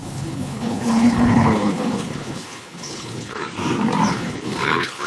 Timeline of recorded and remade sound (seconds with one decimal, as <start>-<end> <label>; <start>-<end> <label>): 0.0-3.4 remade; 3.4-4.1 recorded; 4.1-5.1 remade